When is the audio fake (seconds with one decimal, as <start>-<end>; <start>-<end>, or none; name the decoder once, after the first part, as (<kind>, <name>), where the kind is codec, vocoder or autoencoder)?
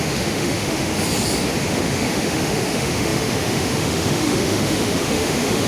0.0-0.9 (autoencoder, DAC-VAE); 1.7-5.7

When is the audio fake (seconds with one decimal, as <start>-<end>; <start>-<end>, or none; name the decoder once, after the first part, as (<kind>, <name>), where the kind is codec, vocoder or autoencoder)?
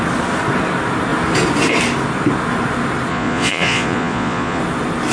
3.1-4.6 (vocoder, Vocos)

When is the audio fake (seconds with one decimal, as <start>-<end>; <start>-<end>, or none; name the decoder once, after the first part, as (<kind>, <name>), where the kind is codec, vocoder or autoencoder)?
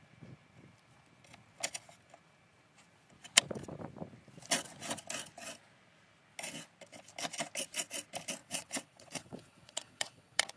8.4-10.6 (vocoder, WaveNeXt)